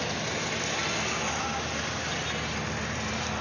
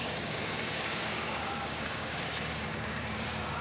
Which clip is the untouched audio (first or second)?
first